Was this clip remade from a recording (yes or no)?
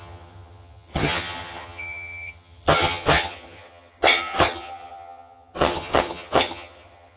yes